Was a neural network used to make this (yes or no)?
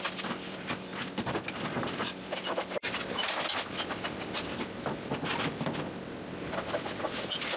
no